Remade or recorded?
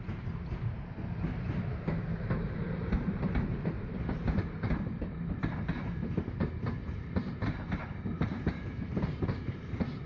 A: remade